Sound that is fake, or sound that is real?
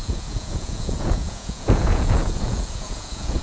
fake